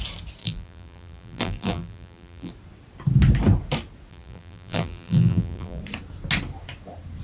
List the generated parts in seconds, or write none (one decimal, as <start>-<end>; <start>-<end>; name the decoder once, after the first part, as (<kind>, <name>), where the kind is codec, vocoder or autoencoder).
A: 0.4-2.5 (vocoder, BigVGAN v2); 4.1-5.8